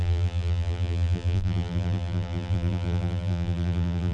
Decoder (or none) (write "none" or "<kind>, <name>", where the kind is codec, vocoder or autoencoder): vocoder, BigVGAN v2